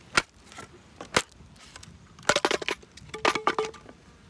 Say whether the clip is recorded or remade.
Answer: recorded